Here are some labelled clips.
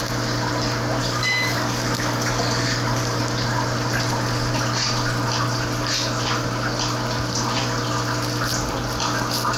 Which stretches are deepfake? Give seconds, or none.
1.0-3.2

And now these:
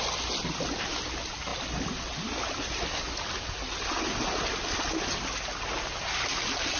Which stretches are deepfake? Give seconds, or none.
none

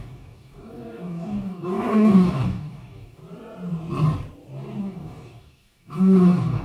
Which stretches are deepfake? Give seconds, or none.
0.0-3.2; 4.8-6.6

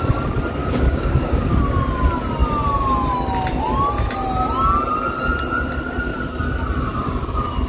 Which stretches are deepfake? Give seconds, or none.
0.6-1.6